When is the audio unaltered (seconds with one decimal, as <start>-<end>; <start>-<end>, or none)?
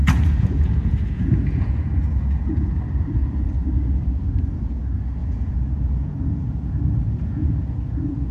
2.8-5.2